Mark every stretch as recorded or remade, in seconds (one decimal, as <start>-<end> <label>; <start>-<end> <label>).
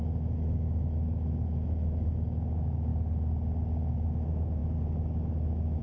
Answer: 0.0-2.9 remade; 2.9-3.8 recorded; 3.8-4.6 remade; 4.6-5.8 recorded